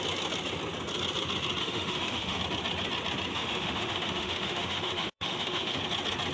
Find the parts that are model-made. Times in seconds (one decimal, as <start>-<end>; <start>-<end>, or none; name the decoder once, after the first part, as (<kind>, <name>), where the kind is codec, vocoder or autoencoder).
1.6-2.4 (autoencoder, DAC-VAE); 3.3-5.8